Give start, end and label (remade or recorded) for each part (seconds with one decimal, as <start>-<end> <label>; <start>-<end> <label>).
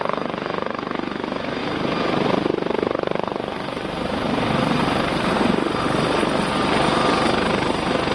0.0-1.6 recorded; 1.6-5.4 remade; 5.4-8.1 recorded